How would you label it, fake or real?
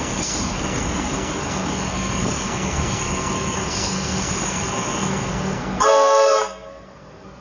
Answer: fake